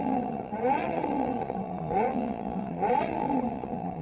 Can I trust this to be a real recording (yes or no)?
no